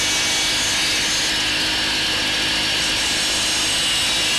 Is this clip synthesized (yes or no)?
no